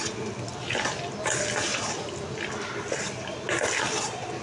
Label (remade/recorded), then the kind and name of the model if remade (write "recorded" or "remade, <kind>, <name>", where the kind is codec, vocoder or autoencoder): recorded